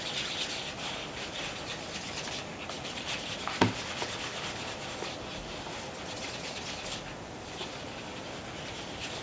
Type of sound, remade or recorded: recorded